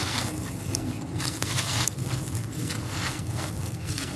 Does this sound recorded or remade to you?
remade